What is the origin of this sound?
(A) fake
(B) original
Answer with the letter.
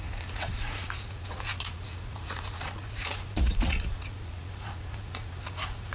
A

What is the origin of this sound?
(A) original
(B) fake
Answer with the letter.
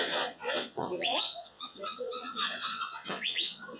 B